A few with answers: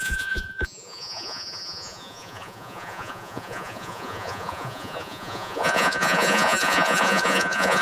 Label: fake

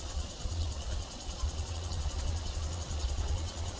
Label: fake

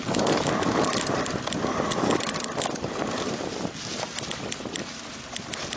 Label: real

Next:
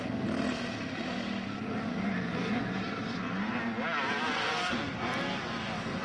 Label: real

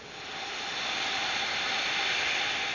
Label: real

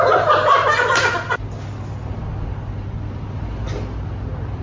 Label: real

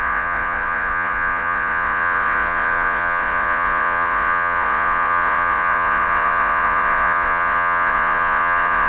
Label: fake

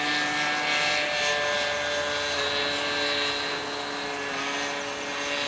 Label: real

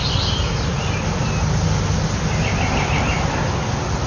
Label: real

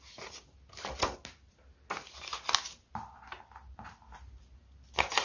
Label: real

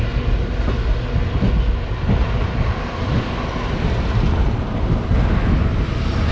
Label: real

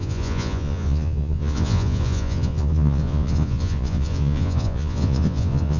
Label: fake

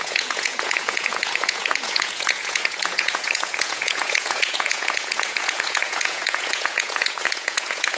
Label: fake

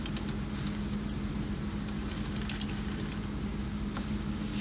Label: real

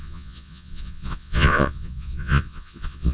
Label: fake